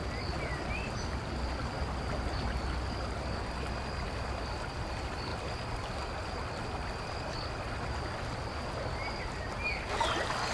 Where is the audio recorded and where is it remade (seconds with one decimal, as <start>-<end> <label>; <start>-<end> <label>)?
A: 0.0-10.5 recorded